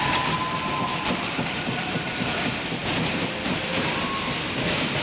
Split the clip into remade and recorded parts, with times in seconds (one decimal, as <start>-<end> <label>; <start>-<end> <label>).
0.0-0.9 recorded; 0.9-2.2 remade; 2.2-5.0 recorded